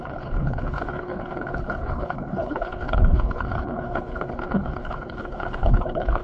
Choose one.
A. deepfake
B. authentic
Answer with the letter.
A